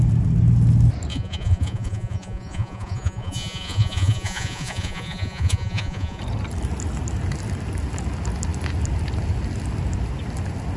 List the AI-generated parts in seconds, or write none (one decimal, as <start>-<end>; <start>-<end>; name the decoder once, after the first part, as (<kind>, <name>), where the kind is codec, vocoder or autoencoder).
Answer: 1.1-6.2 (vocoder, Vocos)